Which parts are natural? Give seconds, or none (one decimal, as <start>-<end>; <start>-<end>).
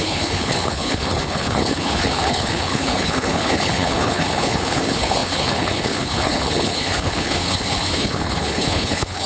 none